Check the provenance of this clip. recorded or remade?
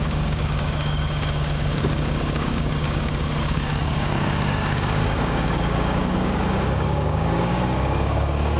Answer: remade